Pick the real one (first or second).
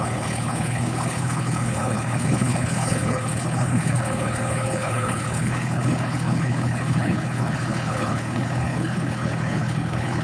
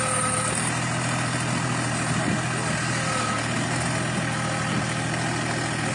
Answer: second